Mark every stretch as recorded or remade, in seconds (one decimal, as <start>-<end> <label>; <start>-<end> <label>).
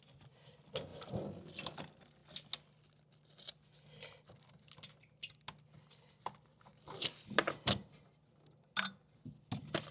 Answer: 0.0-9.9 recorded